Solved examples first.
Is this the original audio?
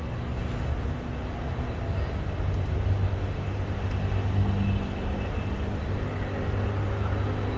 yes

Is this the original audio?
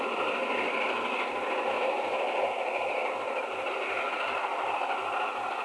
yes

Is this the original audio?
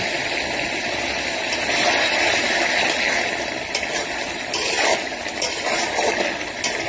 yes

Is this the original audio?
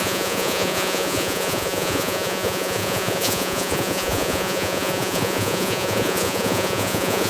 no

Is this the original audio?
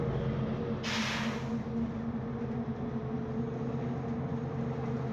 yes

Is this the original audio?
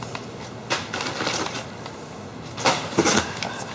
yes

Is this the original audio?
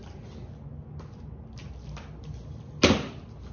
yes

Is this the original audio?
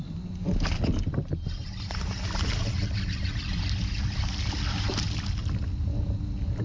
yes